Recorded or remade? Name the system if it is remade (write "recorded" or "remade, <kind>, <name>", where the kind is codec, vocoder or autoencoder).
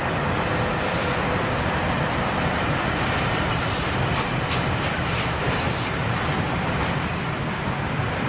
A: remade, vocoder, BigVGAN v2